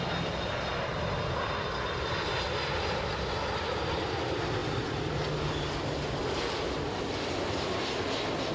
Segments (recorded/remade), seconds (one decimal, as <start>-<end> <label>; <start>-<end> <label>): 0.0-8.5 recorded